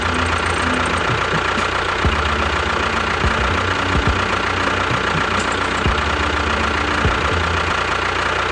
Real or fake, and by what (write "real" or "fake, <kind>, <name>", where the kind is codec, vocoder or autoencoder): real